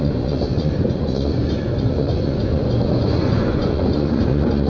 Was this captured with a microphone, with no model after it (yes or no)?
no